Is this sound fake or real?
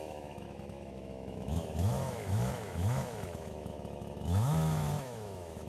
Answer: fake